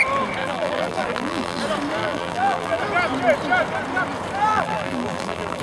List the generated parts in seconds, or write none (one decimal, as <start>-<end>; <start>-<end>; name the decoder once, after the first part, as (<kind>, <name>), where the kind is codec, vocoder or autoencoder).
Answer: 0.4-1.6 (vocoder, BigVGAN v2); 2.0-2.8; 4.5-5.6